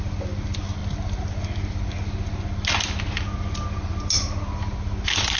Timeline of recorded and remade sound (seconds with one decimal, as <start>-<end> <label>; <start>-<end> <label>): 0.0-5.4 recorded